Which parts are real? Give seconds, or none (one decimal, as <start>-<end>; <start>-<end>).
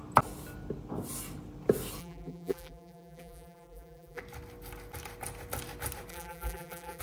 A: 0.0-2.0; 4.2-6.1